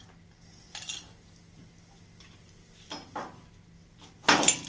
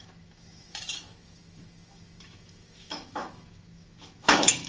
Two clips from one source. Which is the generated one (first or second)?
second